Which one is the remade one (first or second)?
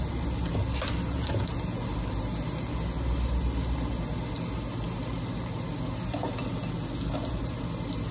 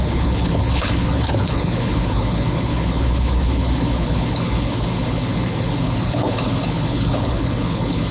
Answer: second